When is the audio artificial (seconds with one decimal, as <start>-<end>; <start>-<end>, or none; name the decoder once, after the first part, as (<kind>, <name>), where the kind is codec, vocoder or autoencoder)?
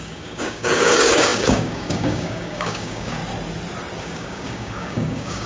0.0-3.2 (codec, DAC); 4.0-5.5